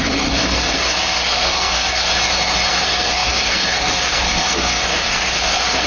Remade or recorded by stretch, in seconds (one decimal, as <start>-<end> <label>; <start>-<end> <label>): 0.0-2.1 remade; 2.1-2.7 recorded; 2.7-5.9 remade